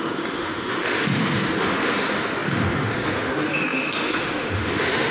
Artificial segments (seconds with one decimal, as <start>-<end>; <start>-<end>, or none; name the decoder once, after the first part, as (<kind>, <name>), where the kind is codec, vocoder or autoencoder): 0.0-5.1 (autoencoder, DAC-VAE)